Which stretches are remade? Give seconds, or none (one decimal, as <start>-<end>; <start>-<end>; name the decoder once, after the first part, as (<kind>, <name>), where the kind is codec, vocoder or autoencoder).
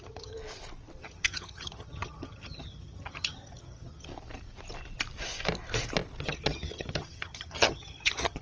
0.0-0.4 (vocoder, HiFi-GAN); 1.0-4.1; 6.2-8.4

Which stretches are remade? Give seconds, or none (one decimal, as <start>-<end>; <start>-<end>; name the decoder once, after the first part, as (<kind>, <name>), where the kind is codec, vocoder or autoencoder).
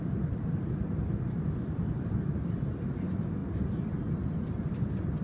0.0-5.2 (vocoder, BigVGAN v2)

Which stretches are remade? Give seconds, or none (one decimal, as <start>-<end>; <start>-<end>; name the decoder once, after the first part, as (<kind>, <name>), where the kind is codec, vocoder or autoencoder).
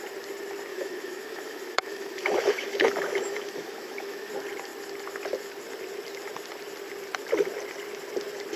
0.7-4.3 (autoencoder, DAC-VAE)